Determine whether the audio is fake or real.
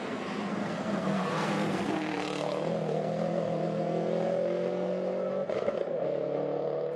fake